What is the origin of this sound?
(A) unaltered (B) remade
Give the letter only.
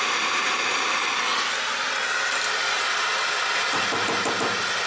A